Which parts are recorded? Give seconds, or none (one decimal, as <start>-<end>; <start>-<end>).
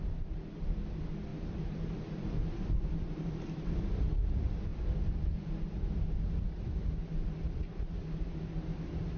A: 0.0-1.3; 3.7-4.7; 5.5-9.2